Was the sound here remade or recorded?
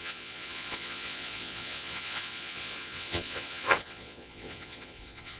remade